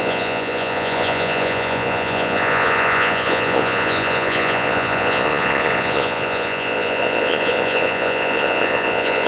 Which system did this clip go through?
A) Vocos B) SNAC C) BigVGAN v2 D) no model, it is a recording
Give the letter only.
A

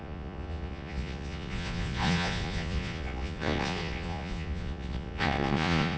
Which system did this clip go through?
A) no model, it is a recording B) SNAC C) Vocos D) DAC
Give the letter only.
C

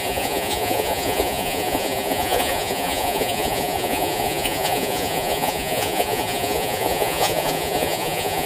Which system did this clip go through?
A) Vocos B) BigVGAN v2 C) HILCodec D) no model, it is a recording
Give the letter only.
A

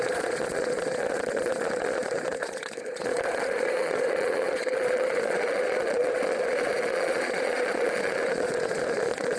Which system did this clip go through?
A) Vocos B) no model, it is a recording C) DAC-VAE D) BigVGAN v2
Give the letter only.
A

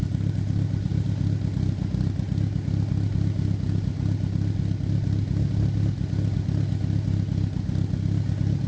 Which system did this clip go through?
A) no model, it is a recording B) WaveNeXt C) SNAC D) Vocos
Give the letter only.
A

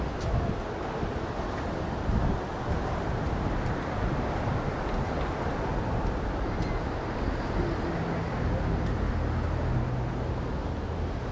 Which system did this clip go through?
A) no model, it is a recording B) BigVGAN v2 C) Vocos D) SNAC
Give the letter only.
A